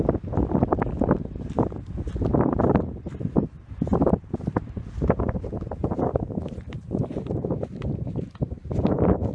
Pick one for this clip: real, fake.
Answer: fake